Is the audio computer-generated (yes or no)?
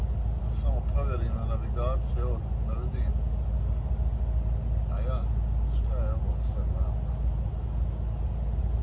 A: no